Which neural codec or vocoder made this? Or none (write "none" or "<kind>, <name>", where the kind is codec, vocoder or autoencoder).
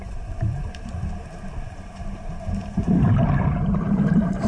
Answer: vocoder, BigVGAN v2